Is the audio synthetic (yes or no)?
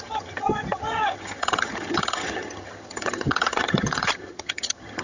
yes